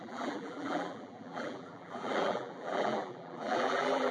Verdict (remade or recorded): remade